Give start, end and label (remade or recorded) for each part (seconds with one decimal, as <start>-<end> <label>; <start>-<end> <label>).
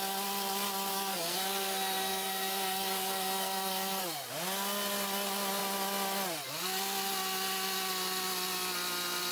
0.0-0.9 recorded; 0.9-4.0 remade; 4.0-9.3 recorded